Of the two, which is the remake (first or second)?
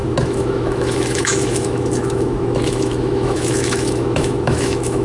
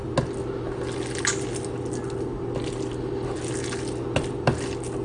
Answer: first